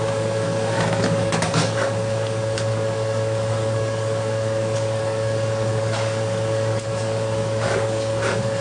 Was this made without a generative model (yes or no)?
no